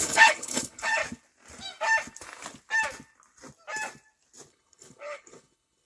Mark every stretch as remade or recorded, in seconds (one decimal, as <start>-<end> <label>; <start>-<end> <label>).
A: 0.0-1.0 remade; 1.0-4.5 recorded; 4.5-5.9 remade